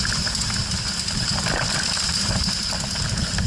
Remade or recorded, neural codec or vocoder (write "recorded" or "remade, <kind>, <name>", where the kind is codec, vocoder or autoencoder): recorded